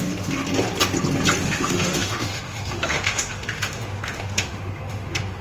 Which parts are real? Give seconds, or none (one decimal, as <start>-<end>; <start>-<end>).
0.4-1.4